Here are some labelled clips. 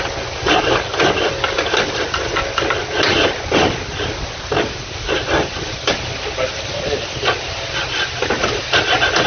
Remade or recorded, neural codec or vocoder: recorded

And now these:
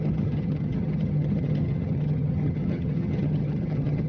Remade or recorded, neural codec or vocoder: remade, vocoder, HiFi-GAN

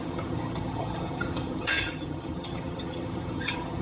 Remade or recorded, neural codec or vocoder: remade, vocoder, HiFi-GAN